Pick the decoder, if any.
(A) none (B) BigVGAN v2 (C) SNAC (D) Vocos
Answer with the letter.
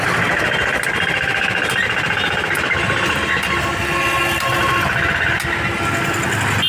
A